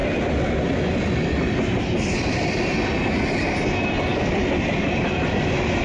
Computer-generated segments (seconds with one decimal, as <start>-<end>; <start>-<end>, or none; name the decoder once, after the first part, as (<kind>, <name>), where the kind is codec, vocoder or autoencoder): none